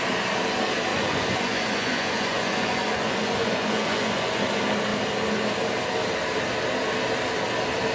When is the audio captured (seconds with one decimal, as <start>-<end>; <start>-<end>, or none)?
0.0-0.9; 4.4-7.9